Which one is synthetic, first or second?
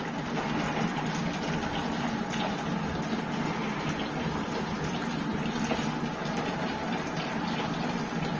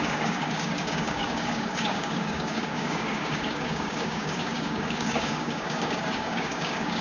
second